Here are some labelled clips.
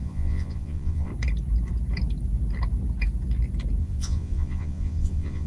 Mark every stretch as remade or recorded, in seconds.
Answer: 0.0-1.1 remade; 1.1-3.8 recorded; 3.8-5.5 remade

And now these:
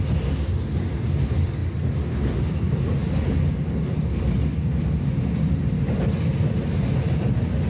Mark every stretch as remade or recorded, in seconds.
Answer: 0.0-7.7 recorded

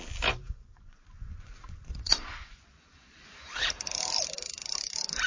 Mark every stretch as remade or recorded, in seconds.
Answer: 0.0-0.4 recorded; 0.4-3.6 remade; 3.6-5.3 recorded

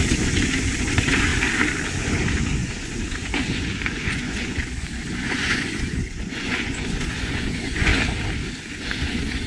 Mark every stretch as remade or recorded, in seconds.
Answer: 0.0-1.3 remade; 1.3-2.0 recorded; 2.0-7.9 remade; 7.9-8.7 recorded; 8.7-9.5 remade

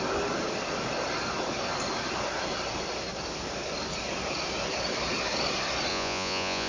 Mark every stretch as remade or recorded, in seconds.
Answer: 0.0-5.9 recorded; 5.9-6.7 remade